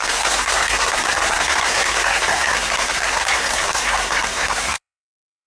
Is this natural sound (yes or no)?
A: no